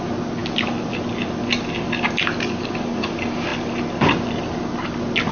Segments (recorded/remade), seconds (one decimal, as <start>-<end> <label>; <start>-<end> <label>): 0.0-5.3 recorded